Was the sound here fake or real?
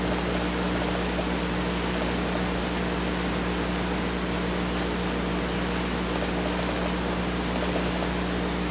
real